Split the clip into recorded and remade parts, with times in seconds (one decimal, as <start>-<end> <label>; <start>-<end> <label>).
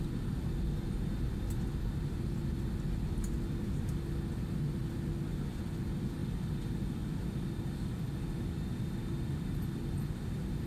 0.0-10.7 recorded